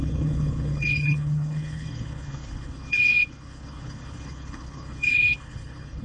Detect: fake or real fake